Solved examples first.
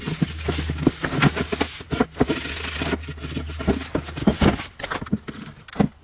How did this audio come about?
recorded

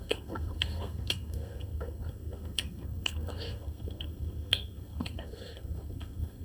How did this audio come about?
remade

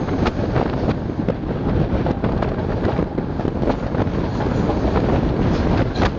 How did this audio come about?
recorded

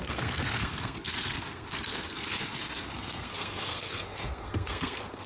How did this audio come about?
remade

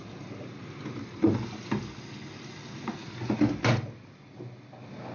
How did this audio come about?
recorded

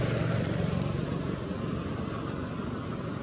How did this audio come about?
recorded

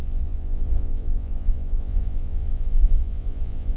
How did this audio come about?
remade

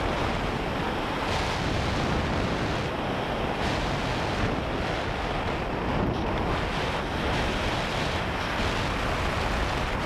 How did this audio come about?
recorded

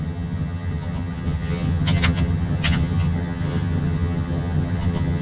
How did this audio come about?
remade